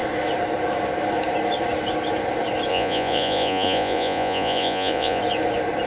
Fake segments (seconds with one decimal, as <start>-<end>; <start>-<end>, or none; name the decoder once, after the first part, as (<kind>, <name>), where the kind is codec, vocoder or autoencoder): 2.7-5.2 (vocoder, Vocos)

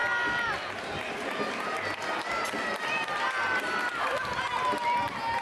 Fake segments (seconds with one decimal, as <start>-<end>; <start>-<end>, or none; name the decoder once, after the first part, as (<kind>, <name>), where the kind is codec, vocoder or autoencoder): none

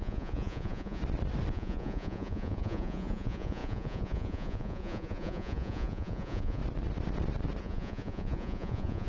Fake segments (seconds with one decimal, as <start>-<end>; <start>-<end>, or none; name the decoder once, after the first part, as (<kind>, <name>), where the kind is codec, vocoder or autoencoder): 0.0-1.0 (vocoder, Vocos); 1.5-6.6; 7.6-9.1

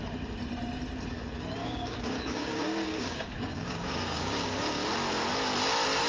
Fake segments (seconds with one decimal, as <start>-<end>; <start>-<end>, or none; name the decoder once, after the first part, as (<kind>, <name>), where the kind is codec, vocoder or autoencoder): 1.6-4.6 (codec, DAC)